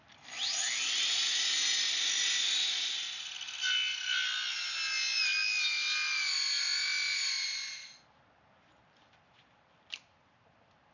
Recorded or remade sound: recorded